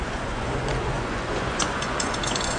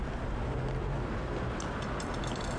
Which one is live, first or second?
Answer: second